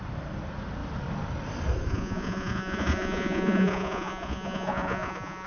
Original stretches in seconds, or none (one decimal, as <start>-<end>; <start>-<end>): 0.0-1.9

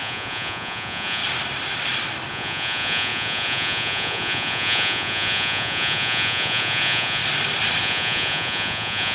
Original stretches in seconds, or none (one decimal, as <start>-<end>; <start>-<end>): 1.2-2.3; 7.2-7.8

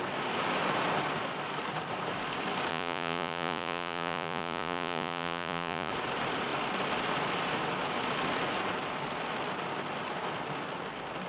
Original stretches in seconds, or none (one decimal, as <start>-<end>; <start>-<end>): 0.0-2.7; 5.9-11.3

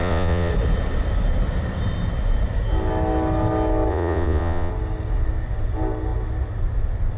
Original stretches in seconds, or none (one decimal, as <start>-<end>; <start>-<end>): 0.5-3.9; 4.7-7.2

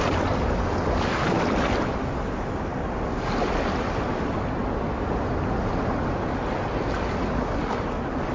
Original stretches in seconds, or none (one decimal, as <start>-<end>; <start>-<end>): 0.0-8.3

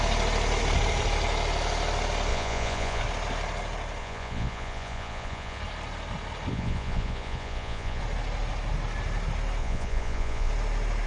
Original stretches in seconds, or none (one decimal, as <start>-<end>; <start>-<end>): 0.0-2.3; 3.0-4.0; 5.6-6.5; 8.0-9.6; 10.5-11.1